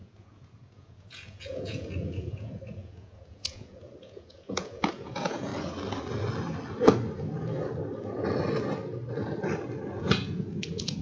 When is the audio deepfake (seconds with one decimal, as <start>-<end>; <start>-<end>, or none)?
0.0-5.5; 10.0-11.0